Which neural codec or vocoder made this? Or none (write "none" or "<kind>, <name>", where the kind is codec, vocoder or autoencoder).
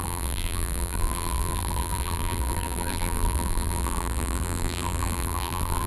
vocoder, BigVGAN v2